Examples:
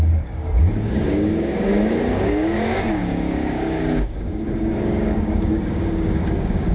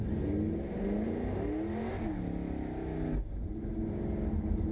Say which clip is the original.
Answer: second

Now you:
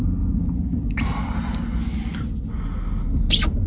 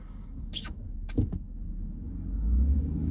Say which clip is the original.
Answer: first